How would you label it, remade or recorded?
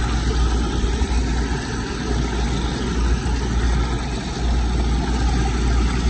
recorded